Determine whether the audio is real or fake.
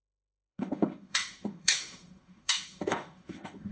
fake